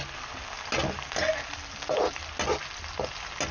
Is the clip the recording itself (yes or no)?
yes